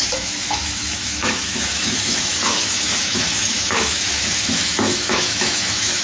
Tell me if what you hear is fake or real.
fake